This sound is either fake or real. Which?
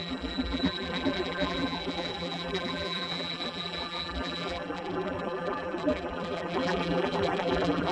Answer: fake